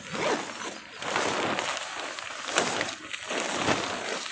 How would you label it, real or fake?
real